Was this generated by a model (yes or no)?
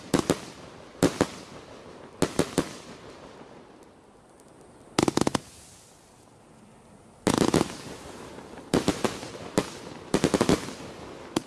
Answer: no